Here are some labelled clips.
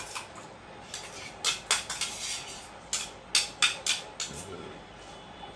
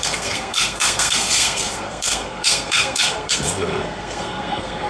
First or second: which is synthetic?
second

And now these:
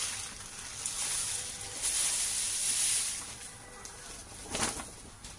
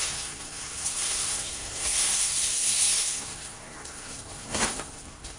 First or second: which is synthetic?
second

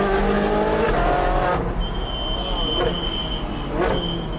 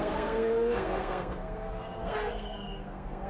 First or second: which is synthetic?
second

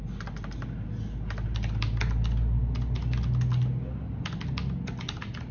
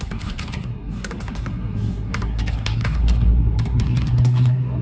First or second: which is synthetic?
second